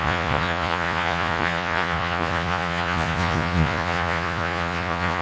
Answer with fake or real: fake